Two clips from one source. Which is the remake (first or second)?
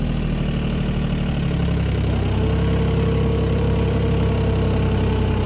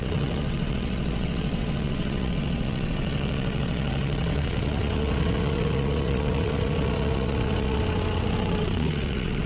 second